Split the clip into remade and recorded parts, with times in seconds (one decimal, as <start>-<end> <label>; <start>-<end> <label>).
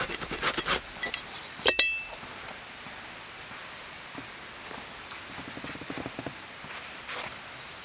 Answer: 0.0-7.8 recorded